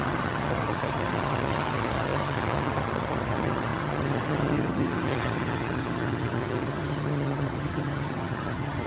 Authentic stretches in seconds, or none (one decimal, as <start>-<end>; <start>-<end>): none